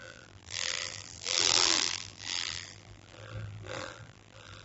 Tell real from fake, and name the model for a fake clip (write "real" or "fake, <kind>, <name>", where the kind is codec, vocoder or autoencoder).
fake, vocoder, BigVGAN v2